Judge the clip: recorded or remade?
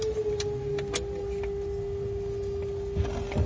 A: recorded